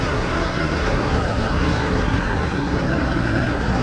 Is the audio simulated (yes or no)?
yes